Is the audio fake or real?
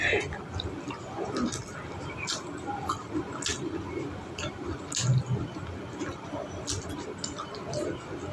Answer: real